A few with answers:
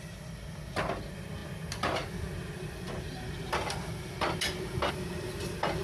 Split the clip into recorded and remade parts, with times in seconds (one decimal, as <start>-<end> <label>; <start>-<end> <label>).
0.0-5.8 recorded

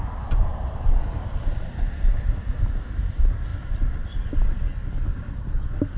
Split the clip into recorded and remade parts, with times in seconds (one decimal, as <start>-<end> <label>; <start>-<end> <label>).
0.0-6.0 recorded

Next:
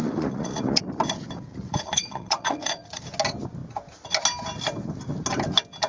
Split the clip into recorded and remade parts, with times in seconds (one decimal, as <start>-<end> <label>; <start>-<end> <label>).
0.0-0.8 remade; 0.8-1.5 recorded; 1.5-3.0 remade; 3.0-5.9 recorded

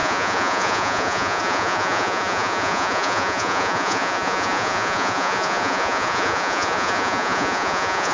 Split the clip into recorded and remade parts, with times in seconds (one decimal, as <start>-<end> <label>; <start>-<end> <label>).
0.0-8.1 remade